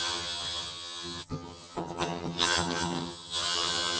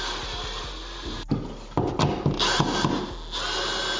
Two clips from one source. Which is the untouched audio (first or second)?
second